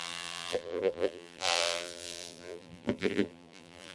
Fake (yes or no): yes